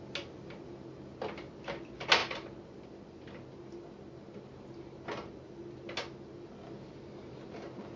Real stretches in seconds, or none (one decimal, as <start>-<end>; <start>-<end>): 0.0-8.0